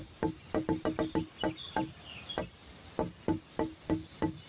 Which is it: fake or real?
real